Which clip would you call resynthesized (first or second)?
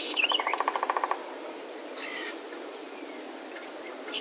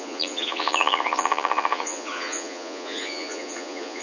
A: second